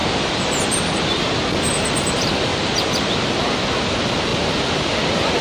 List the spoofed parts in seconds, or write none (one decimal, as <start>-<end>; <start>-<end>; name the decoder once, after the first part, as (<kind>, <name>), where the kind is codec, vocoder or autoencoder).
0.0-0.8 (vocoder, BigVGAN v2); 2.5-3.1